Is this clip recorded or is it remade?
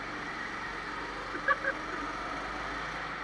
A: recorded